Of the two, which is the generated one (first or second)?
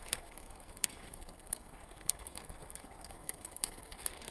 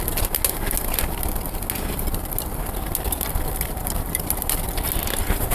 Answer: first